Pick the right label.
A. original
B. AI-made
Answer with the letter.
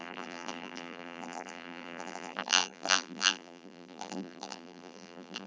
B